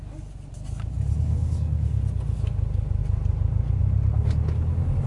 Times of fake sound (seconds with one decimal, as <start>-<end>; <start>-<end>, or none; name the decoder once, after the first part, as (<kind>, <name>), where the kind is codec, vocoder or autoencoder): 1.3-2.0 (codec, SNAC)